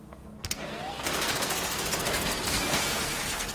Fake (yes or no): yes